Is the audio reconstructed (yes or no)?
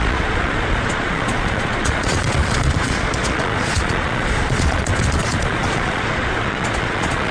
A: yes